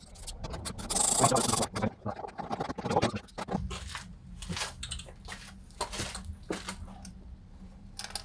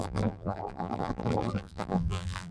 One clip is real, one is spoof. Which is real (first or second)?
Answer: first